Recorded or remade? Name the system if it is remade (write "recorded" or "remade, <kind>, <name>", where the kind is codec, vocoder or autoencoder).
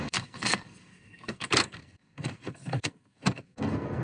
remade, codec, SNAC